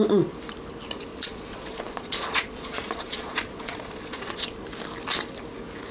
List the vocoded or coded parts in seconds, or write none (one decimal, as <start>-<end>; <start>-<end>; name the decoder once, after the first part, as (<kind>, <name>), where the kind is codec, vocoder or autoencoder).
1.1-4.6 (vocoder, Vocos)